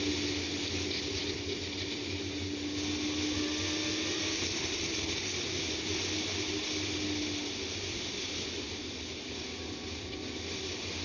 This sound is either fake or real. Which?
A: real